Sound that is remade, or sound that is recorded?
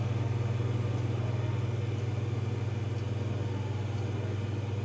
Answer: recorded